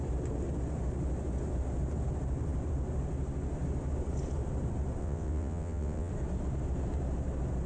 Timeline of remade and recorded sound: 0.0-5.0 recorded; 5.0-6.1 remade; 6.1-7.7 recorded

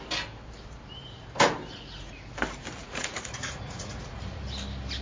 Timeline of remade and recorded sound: 0.0-2.8 recorded; 2.8-4.4 remade; 4.4-5.0 recorded